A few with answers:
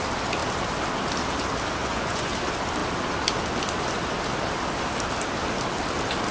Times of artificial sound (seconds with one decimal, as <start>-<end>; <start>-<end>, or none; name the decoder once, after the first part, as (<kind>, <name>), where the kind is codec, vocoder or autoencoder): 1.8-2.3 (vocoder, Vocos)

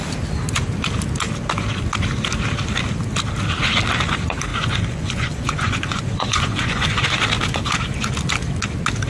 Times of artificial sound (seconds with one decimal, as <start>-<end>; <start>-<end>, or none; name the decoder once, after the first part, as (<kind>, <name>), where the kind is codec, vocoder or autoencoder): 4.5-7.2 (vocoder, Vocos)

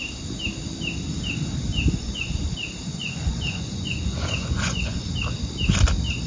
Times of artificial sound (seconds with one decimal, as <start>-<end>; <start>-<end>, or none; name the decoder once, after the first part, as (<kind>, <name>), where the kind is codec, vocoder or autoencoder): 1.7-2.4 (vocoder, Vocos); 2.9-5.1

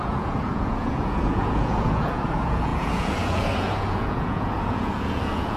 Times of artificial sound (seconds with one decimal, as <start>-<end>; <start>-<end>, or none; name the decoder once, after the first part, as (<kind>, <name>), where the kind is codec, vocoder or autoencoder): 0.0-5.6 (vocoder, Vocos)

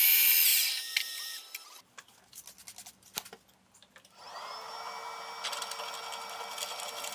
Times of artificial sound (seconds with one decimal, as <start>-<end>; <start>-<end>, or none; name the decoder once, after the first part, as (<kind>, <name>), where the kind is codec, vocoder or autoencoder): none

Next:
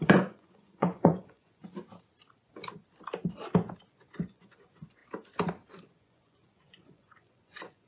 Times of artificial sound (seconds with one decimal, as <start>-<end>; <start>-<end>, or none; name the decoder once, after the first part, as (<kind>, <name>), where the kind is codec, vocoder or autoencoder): 0.0-1.6 (vocoder, Vocos); 3.9-5.0; 5.9-7.9

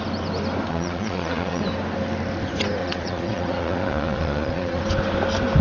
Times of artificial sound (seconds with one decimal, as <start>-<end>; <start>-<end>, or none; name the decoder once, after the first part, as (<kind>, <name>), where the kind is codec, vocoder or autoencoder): 0.7-1.6 (vocoder, Vocos); 2.8-4.8

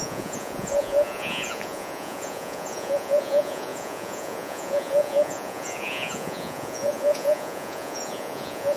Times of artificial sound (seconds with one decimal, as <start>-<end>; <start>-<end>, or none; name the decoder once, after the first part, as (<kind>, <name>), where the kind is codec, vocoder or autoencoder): 0.0-8.8 (vocoder, Vocos)